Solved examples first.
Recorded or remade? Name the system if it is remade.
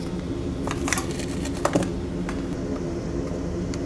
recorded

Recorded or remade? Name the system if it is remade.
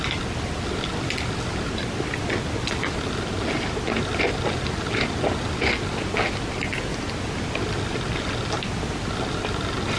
recorded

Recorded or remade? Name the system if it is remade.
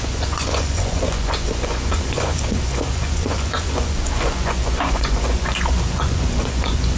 remade, vocoder, Vocos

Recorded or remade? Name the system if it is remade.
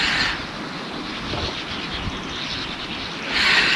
recorded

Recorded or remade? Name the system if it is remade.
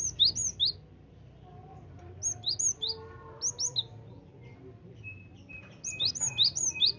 recorded